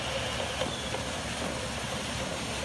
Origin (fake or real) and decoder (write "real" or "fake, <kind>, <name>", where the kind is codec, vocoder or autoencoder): real